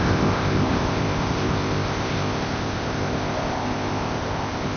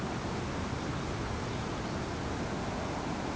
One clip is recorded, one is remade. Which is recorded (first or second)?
second